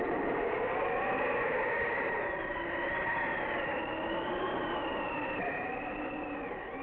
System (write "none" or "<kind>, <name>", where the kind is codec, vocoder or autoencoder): none